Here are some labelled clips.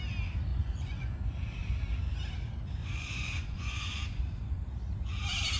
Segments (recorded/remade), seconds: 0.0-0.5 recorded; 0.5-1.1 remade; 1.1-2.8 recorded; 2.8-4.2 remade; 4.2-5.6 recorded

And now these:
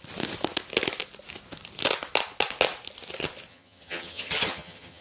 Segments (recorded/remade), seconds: 0.0-3.5 recorded; 3.5-5.0 remade

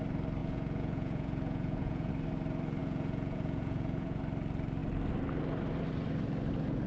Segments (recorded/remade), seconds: 0.0-0.4 recorded; 0.4-2.1 remade; 2.1-2.8 recorded; 2.8-4.2 remade; 4.2-6.9 recorded

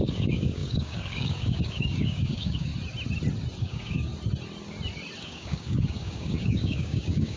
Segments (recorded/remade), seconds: 0.0-2.7 remade; 2.7-3.6 recorded; 3.6-4.1 remade; 4.1-5.2 recorded; 5.2-7.4 remade

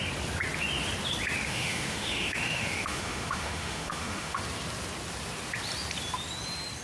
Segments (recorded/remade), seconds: 0.0-1.4 recorded; 1.4-4.4 remade; 4.4-6.8 recorded

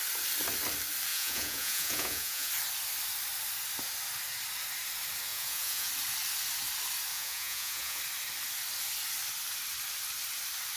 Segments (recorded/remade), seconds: 0.0-1.1 recorded; 1.1-2.5 remade; 2.5-5.3 recorded; 5.3-5.9 remade; 5.9-7.1 recorded; 7.1-8.0 remade; 8.0-10.8 recorded

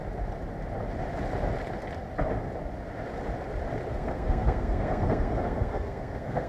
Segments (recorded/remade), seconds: 0.0-3.9 recorded; 3.9-6.5 remade

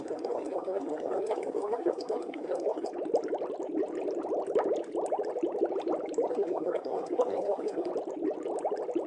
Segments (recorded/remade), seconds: 0.0-2.9 remade; 2.9-6.3 recorded; 6.3-7.9 remade; 7.9-9.1 recorded